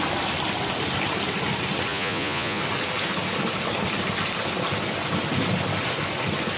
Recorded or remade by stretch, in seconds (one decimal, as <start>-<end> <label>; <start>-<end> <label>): 0.0-1.9 recorded; 1.9-2.6 remade; 2.6-6.6 recorded